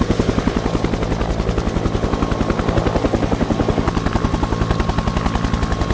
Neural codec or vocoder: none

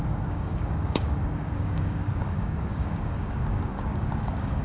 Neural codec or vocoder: codec, DAC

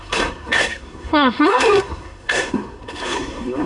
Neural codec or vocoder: codec, SNAC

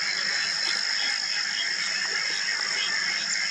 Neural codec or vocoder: none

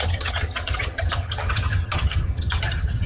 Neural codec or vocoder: vocoder, HiFi-GAN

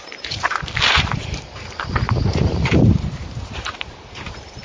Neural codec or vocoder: vocoder, BigVGAN v2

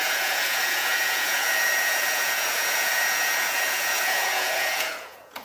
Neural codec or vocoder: vocoder, Vocos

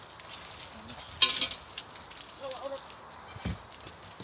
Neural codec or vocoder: none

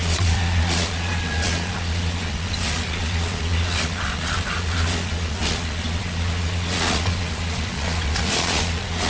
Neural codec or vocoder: vocoder, Vocos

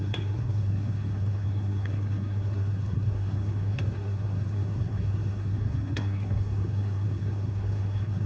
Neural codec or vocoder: codec, SNAC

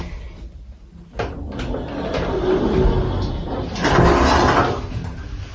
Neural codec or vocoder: none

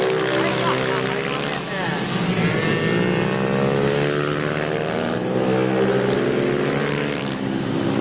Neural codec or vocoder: none